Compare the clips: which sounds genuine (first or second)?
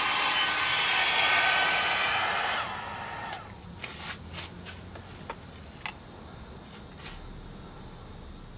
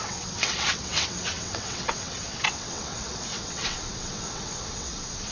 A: first